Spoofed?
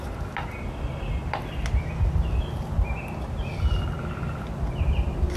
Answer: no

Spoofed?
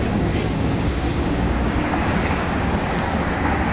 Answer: yes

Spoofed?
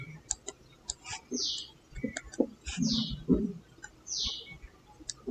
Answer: no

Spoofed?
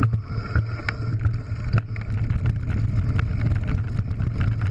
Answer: no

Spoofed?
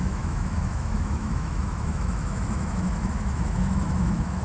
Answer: yes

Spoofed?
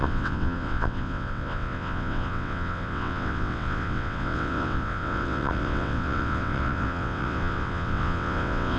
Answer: yes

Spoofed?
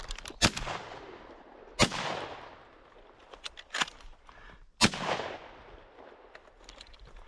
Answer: no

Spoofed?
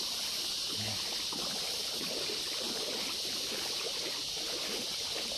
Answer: no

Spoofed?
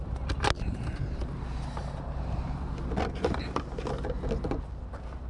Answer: no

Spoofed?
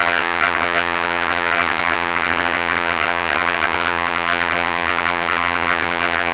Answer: yes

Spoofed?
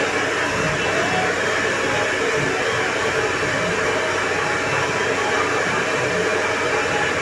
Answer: no